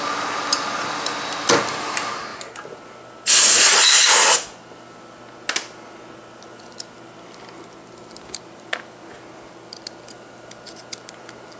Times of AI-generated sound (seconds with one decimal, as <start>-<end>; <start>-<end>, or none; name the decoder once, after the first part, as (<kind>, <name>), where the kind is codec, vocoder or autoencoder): none